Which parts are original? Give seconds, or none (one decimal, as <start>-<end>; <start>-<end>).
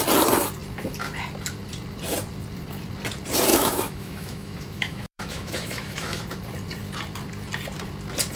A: 0.0-3.5; 6.2-8.4